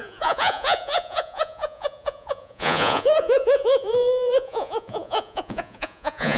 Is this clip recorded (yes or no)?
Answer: no